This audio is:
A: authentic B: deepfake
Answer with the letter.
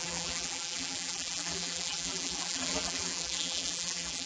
B